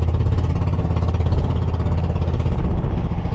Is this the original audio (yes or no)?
yes